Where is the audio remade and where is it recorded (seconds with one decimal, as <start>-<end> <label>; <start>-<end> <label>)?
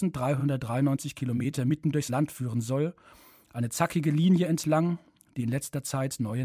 0.0-0.4 recorded; 0.4-2.1 remade; 2.1-6.4 recorded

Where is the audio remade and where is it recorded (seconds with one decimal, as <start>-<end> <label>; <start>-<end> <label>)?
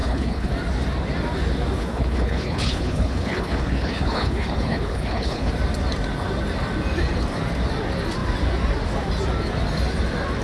0.0-0.5 remade; 0.5-1.8 recorded; 1.8-5.5 remade; 5.5-10.4 recorded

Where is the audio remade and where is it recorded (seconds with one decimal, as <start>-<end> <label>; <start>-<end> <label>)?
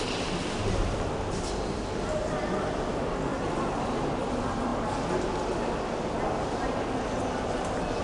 0.0-8.0 recorded